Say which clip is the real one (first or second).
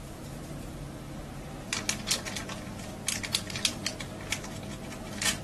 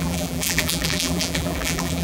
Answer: first